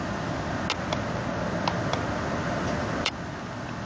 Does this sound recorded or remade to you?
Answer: recorded